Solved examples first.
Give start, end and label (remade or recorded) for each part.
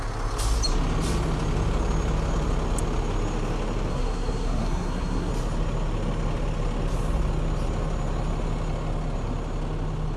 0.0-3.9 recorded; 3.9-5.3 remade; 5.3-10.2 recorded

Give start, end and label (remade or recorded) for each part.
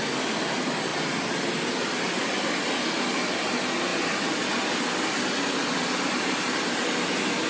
0.0-7.5 recorded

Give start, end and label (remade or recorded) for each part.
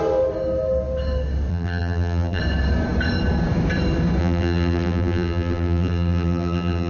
0.0-1.5 recorded; 1.5-2.4 remade; 2.4-4.2 recorded; 4.2-6.9 remade